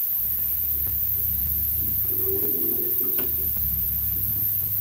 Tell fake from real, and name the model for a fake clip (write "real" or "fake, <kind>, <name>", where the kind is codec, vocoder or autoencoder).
fake, vocoder, BigVGAN v2